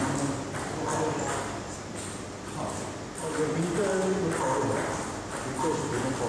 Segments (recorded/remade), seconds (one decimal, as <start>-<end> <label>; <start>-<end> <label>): 0.0-6.3 recorded